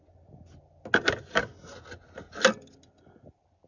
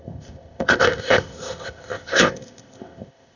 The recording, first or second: first